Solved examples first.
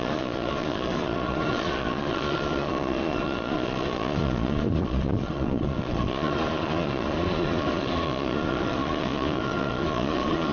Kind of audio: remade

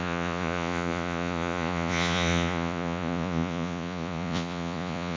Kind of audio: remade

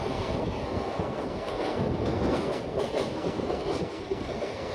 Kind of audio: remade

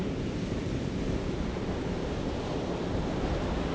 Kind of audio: recorded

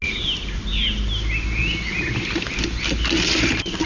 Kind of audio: recorded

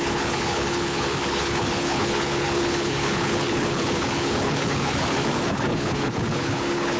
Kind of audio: remade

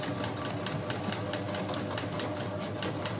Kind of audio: recorded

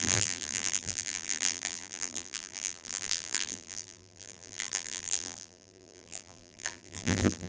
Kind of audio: remade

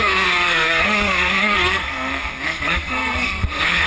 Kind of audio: remade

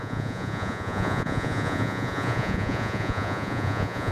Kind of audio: remade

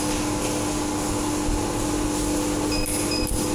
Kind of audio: recorded